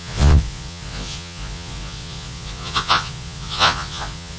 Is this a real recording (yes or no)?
no